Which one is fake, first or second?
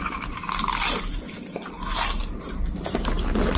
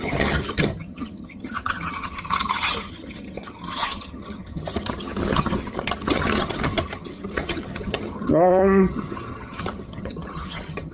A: second